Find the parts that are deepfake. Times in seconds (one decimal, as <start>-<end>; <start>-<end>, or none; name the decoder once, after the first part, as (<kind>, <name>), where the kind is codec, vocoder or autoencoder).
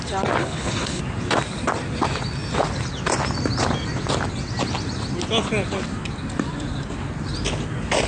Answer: 0.4-1.0 (codec, HILCodec)